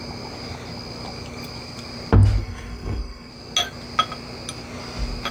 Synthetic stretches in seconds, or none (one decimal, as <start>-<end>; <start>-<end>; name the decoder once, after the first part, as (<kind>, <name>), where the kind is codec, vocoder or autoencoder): 2.4-3.3 (codec, SNAC)